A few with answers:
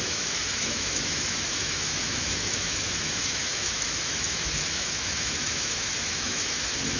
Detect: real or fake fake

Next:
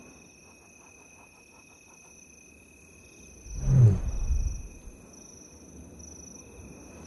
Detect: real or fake real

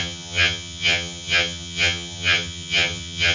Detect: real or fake fake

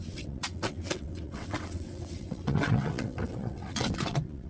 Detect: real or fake fake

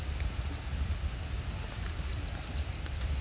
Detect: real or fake real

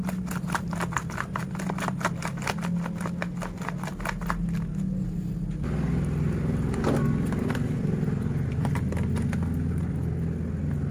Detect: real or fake real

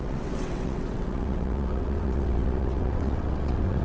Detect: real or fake fake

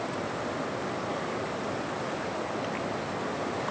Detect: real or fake real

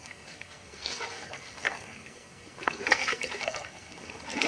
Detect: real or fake fake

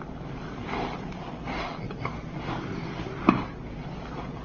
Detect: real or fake real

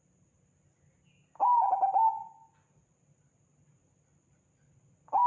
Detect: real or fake real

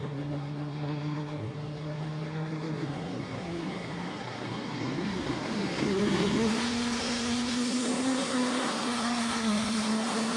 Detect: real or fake fake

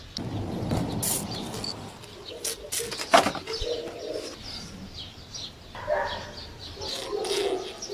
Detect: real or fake real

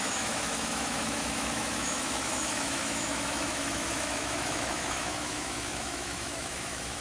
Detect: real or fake fake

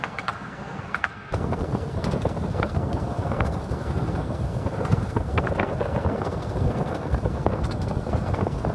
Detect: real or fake fake